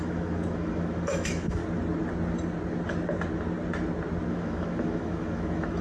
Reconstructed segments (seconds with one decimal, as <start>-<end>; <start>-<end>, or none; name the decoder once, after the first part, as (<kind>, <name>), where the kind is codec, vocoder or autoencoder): 0.0-1.6 (autoencoder, DAC-VAE); 4.3-5.8